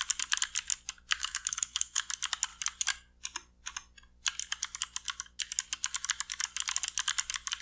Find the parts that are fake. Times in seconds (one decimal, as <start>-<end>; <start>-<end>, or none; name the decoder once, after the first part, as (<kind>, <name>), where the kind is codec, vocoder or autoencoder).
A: 1.2-2.1 (codec, SNAC)